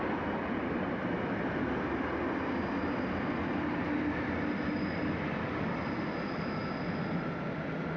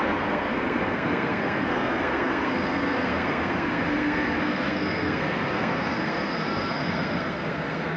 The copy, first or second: second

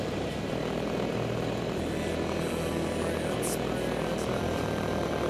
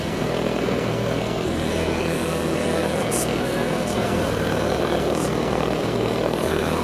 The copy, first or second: second